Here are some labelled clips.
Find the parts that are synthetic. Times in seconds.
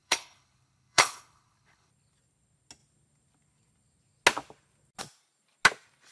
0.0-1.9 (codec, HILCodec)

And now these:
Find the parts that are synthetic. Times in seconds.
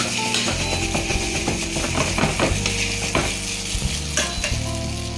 1.1-1.6 (vocoder, Vocos)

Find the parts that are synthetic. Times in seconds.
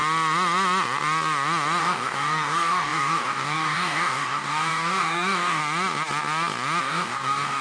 1.8-5.6 (codec, DAC); 6.8-7.6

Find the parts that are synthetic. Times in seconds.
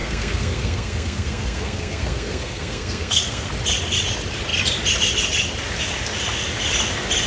0.0-3.5 (codec, SNAC)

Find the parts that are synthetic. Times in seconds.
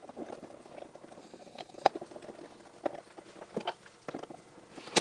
1.2-1.9 (codec, SNAC)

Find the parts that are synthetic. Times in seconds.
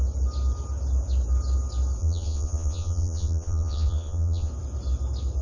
2.0-4.5 (vocoder, Vocos)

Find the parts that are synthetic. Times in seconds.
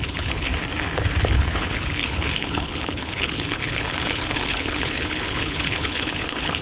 0.0-0.5 (codec, HILCodec); 1.2-6.6